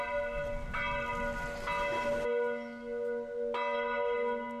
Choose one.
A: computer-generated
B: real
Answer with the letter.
B